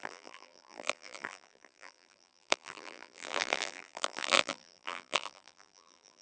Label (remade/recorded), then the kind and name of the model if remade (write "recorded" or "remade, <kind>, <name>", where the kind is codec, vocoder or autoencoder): remade, vocoder, BigVGAN v2